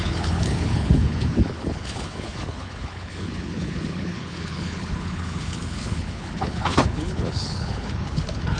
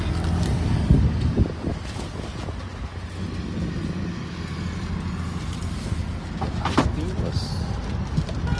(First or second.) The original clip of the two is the second